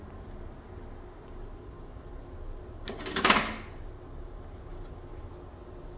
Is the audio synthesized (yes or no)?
no